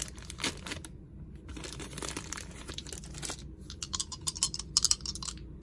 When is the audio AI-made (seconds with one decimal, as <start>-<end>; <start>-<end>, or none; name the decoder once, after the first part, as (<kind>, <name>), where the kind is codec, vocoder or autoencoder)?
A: 1.5-2.8 (vocoder, BigVGAN v2)